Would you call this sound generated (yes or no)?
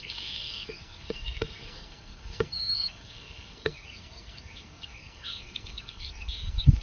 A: yes